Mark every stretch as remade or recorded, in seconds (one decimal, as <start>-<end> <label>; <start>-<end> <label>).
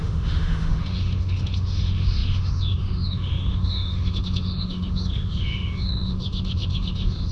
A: 0.0-7.3 remade